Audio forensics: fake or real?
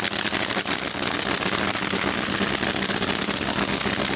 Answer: real